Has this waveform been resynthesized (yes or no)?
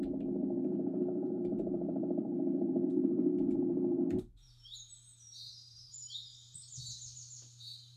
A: yes